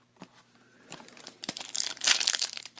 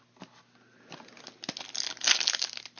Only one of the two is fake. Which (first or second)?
first